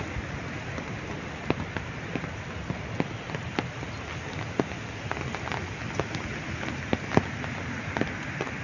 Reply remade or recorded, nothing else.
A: recorded